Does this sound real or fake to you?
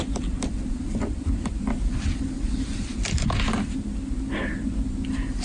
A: real